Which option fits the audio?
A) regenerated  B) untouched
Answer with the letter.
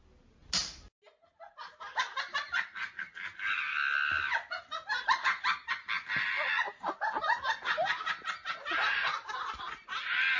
B